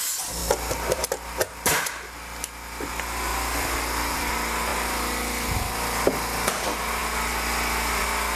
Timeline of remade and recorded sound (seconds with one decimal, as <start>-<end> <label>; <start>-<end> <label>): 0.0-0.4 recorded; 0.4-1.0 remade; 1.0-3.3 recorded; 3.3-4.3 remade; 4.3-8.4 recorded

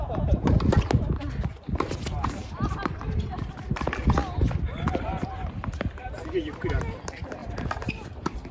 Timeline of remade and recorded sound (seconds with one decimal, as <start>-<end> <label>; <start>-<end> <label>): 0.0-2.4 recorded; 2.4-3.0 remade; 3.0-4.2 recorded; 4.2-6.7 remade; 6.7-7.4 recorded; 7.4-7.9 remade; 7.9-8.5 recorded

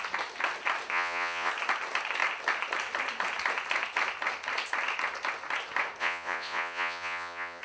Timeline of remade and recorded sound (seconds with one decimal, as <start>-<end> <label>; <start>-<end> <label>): 0.0-0.9 recorded; 0.9-1.5 remade; 1.5-6.0 recorded; 6.0-7.6 remade

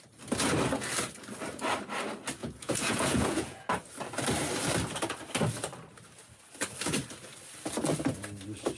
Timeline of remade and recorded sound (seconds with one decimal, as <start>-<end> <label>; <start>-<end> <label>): 0.0-2.4 recorded; 2.4-3.7 remade; 3.7-8.8 recorded

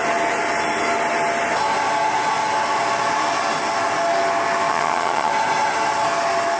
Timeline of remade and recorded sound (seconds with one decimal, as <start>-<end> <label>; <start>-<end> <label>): 0.0-4.7 recorded; 4.7-5.3 remade; 5.3-6.6 recorded

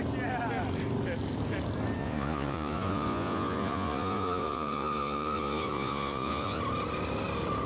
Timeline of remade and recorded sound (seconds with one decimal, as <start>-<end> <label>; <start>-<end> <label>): 0.0-2.0 recorded; 2.0-6.6 remade; 6.6-7.7 recorded

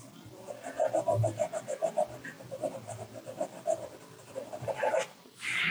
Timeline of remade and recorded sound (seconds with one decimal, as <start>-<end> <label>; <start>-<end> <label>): 0.0-0.8 remade; 0.8-4.2 recorded; 4.2-5.7 remade